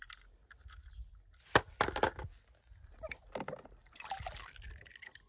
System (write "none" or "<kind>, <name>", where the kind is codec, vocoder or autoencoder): none